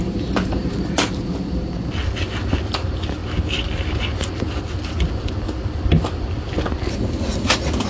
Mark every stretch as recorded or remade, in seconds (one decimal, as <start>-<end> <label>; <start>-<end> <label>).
0.0-7.9 recorded